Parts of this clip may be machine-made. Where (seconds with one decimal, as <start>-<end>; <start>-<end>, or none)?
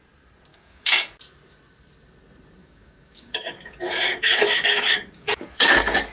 0.5-1.1; 2.6-6.1